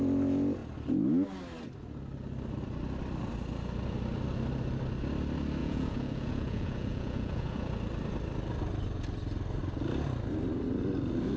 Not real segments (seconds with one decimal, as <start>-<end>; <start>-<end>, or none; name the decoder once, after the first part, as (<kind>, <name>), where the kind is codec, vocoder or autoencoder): 5.6-7.7 (vocoder, Vocos)

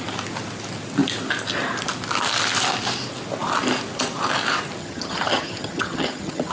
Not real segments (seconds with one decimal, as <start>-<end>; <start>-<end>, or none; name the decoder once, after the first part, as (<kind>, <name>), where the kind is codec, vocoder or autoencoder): 4.8-6.5 (vocoder, HiFi-GAN)

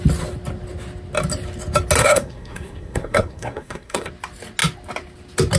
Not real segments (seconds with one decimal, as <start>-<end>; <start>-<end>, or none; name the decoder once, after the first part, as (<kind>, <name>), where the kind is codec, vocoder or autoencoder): 2.0-4.1 (codec, SNAC)

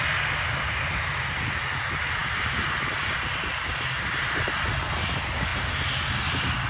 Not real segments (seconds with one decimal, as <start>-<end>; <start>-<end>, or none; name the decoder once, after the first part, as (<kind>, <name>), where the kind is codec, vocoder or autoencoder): none

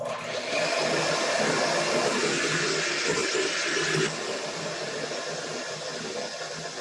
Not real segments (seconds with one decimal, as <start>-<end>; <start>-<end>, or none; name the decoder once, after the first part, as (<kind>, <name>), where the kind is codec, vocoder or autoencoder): none

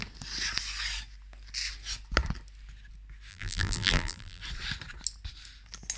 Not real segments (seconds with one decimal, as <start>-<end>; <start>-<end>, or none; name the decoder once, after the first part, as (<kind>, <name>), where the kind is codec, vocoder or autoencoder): 3.3-4.4 (vocoder, BigVGAN v2)